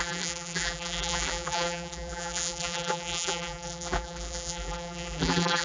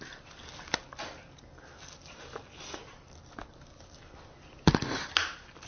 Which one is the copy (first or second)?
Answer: first